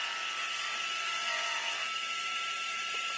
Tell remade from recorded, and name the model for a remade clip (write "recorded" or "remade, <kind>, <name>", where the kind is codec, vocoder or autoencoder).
recorded